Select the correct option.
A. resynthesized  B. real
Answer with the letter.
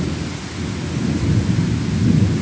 B